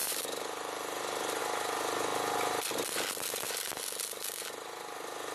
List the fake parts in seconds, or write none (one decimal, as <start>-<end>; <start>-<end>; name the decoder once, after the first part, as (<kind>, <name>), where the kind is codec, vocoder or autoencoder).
0.0-1.4 (vocoder, BigVGAN v2)